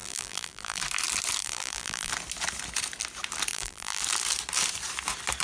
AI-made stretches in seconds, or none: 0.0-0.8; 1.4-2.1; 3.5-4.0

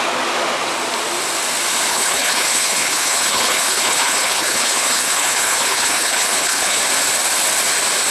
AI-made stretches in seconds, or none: 1.9-6.8